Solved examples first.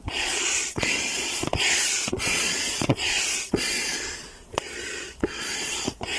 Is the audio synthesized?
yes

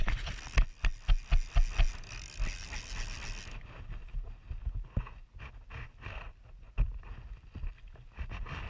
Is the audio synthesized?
no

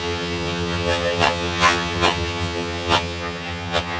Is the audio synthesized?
yes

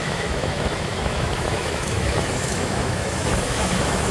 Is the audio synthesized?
yes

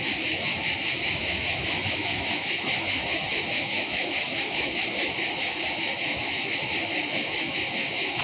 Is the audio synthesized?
yes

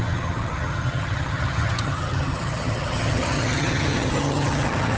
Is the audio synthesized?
yes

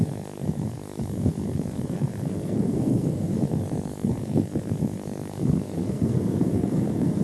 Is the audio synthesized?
yes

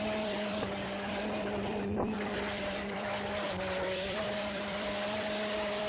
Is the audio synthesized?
yes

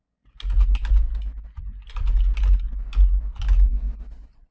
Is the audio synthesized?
no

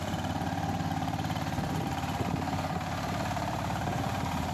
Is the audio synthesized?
yes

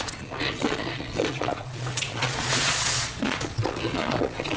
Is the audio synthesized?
yes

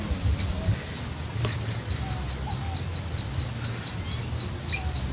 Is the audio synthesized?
no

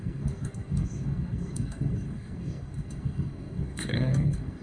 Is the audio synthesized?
yes